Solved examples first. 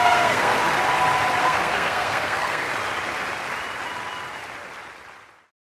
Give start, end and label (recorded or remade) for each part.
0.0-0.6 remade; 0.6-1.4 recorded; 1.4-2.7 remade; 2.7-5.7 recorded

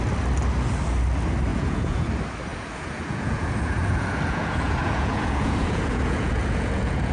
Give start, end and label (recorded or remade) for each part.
0.0-1.5 recorded; 1.5-2.1 remade; 2.1-2.5 recorded; 2.5-7.1 remade